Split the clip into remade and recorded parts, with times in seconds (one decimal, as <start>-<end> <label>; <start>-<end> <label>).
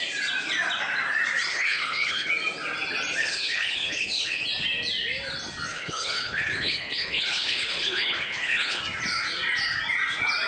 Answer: 0.0-1.5 recorded; 1.5-2.3 remade; 2.3-3.2 recorded; 3.2-4.4 remade; 4.4-5.7 recorded; 5.7-8.8 remade; 8.8-10.5 recorded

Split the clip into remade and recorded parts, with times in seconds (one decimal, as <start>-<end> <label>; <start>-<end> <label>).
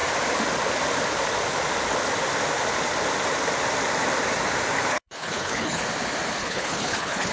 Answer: 0.0-4.9 recorded; 4.9-5.8 remade; 5.8-6.4 recorded; 6.4-7.3 remade